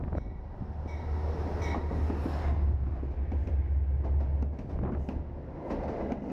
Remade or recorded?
recorded